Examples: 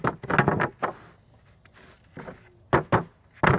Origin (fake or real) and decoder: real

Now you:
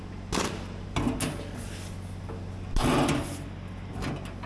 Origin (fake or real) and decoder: real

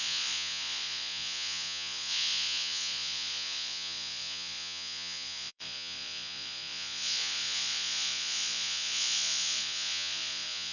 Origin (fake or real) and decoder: fake, vocoder, Vocos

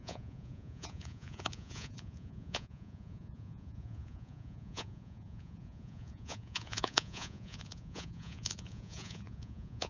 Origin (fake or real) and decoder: fake, vocoder, Vocos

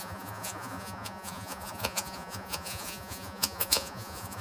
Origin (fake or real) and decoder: fake, vocoder, Vocos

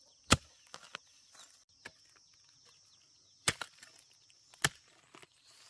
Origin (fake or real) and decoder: real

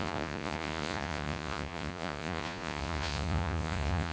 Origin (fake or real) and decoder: fake, vocoder, Vocos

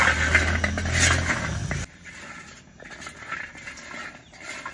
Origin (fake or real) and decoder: real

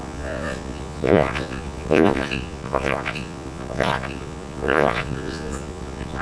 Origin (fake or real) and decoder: fake, vocoder, Vocos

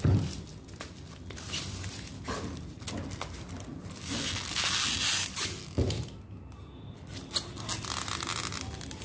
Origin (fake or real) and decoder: real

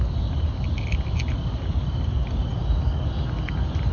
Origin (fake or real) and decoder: real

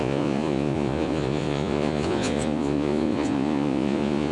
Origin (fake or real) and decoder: fake, vocoder, Vocos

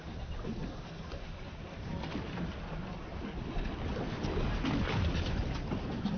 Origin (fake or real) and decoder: real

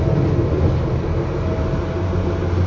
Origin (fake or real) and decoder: real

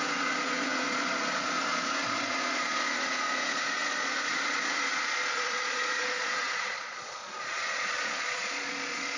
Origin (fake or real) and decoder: fake, vocoder, Vocos